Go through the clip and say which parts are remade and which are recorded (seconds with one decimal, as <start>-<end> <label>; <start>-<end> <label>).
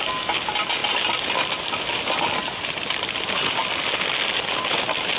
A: 0.0-5.2 recorded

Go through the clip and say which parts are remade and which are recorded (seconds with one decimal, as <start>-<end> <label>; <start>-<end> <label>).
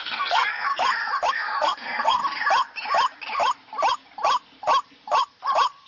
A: 0.0-0.7 remade; 0.7-1.3 recorded; 1.3-2.2 remade; 2.2-5.9 recorded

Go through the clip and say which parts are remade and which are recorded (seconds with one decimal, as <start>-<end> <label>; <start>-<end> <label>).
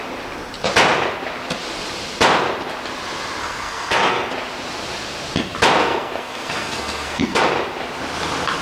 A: 0.0-3.4 recorded; 3.4-4.3 remade; 4.3-5.8 recorded; 5.8-7.4 remade; 7.4-8.6 recorded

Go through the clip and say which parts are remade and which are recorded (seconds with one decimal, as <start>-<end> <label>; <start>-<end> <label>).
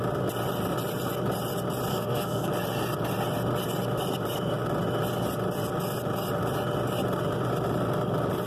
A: 0.0-1.9 recorded; 1.9-2.5 remade; 2.5-8.5 recorded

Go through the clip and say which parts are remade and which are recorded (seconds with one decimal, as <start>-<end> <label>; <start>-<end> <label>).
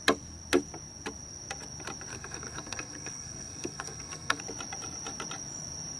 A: 0.0-2.1 recorded; 2.1-4.4 remade; 4.4-6.0 recorded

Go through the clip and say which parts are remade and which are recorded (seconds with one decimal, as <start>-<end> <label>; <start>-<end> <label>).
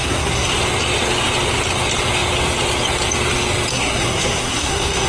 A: 0.0-0.5 remade; 0.5-3.7 recorded; 3.7-5.1 remade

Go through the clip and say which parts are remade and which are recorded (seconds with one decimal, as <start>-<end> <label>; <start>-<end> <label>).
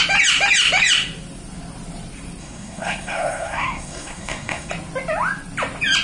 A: 0.0-2.4 recorded; 2.4-4.7 remade; 4.7-6.0 recorded